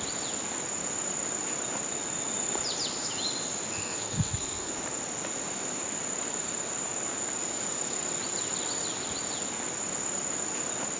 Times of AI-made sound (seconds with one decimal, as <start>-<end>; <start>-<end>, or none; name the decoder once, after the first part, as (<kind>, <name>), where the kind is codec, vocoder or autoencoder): 3.8-4.7 (codec, SNAC)